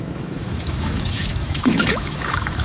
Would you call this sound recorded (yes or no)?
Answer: no